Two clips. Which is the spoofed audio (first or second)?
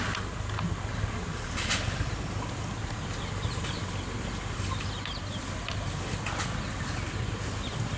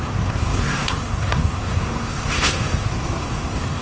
second